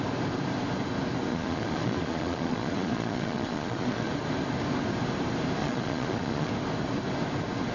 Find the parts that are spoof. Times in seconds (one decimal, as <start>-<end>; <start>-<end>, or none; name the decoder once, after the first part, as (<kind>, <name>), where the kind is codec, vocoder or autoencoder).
1.3-4.1 (vocoder, Vocos); 5.6-6.5